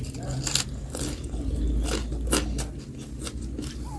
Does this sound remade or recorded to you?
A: recorded